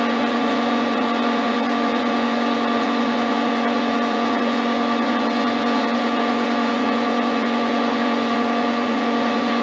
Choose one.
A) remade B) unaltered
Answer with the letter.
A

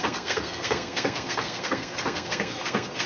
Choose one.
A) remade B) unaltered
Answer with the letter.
A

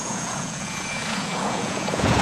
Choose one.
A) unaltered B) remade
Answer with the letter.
B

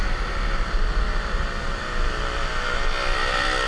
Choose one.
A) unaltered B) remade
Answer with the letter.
A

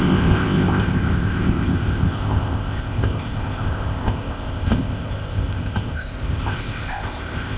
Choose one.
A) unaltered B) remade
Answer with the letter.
B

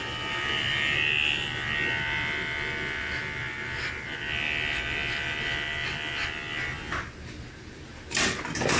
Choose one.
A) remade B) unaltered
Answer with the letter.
B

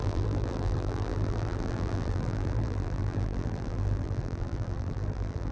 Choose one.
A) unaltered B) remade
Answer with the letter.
B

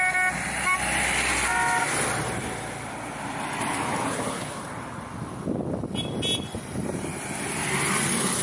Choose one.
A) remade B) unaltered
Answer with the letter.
B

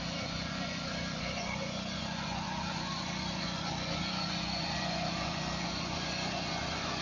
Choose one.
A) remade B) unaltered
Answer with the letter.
A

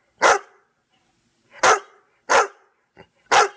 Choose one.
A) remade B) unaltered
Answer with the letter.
B